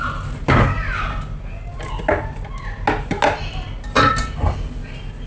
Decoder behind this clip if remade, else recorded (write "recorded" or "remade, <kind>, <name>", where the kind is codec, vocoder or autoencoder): recorded